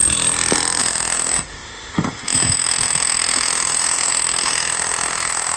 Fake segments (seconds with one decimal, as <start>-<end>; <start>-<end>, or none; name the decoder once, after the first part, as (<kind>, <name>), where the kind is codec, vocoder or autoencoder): 0.8-5.6 (autoencoder, DAC-VAE)